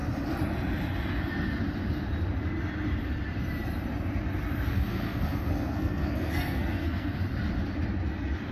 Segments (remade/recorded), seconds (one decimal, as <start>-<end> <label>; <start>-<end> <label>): 0.0-4.7 recorded; 4.7-7.2 remade; 7.2-8.5 recorded